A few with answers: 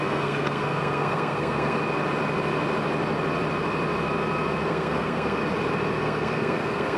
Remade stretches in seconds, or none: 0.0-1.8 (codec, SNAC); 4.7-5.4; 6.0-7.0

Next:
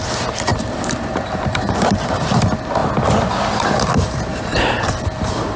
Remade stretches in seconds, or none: 0.5-2.4 (vocoder, BigVGAN v2); 4.3-4.9

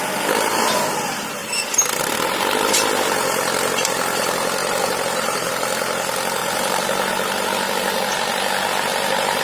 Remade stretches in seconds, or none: 4.6-5.5 (vocoder, BigVGAN v2); 6.4-7.1

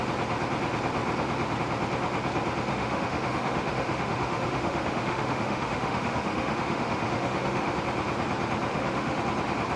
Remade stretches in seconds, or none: 2.7-7.8 (autoencoder, DAC-VAE); 8.7-9.2

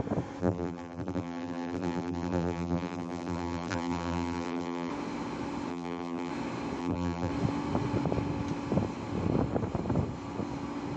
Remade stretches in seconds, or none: 0.4-4.9 (vocoder, BigVGAN v2); 5.7-6.3; 6.8-7.3